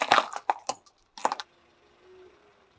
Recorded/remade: remade